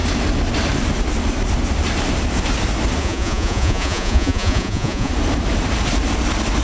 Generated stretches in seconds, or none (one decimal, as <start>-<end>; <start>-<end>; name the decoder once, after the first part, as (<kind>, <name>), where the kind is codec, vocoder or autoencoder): 3.0-5.1 (vocoder, Vocos)